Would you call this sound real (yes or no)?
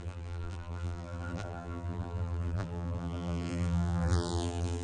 no